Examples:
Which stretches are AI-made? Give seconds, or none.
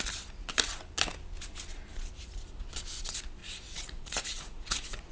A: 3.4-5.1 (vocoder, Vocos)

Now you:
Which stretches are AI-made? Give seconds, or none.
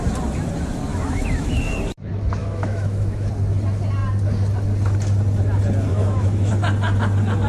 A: 0.9-1.7 (autoencoder, DAC-VAE); 2.4-3.3; 5.9-6.5